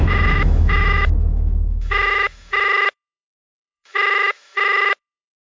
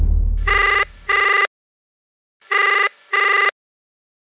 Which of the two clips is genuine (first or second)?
second